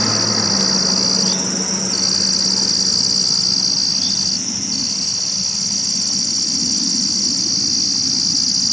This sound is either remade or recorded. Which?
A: recorded